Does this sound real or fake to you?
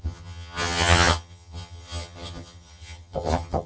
fake